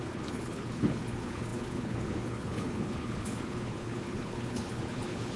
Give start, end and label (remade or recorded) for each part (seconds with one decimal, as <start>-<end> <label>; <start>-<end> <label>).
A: 0.0-5.4 remade

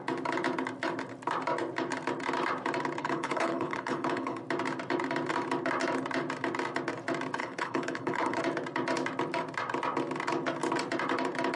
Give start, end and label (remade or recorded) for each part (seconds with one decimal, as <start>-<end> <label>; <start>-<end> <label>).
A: 0.0-3.0 recorded; 3.0-4.4 remade; 4.4-7.4 recorded; 7.4-8.4 remade; 8.4-11.6 recorded

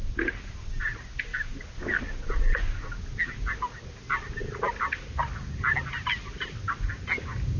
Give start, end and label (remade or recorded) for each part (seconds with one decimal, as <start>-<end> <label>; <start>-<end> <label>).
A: 0.0-7.6 recorded